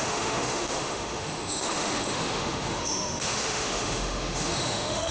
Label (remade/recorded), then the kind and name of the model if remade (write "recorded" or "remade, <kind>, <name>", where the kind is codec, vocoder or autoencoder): remade, autoencoder, DAC-VAE